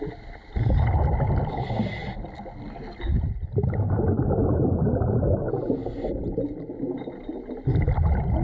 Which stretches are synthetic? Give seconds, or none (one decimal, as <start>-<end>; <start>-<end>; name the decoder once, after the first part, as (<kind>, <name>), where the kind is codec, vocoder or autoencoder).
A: none